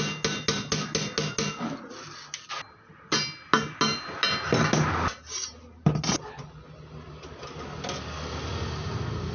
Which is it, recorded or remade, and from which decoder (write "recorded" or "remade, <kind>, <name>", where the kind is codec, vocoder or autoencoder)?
recorded